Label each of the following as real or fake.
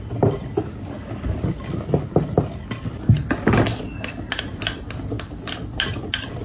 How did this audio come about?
real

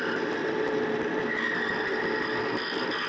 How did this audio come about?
real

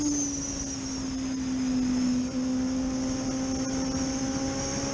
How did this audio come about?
real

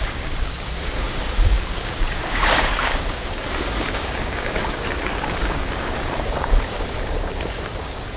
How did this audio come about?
fake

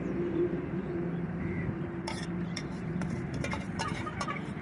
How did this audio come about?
fake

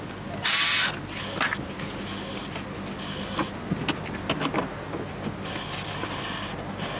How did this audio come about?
real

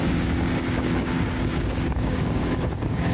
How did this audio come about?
fake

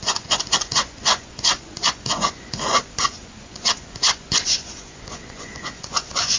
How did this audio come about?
fake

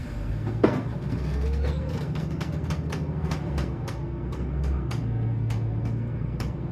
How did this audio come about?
fake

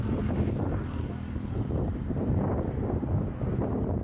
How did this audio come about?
real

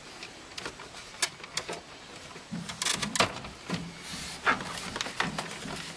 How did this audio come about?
real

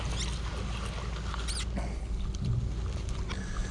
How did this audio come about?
real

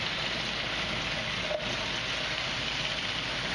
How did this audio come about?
real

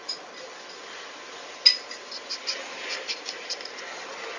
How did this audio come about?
real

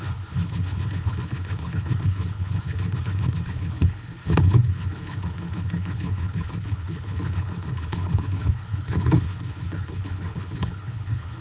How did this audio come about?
fake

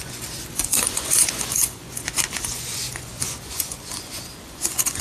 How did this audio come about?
fake